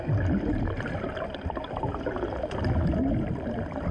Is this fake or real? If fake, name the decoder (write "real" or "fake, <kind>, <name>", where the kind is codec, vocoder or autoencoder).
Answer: real